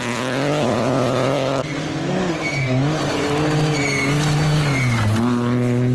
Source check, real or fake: real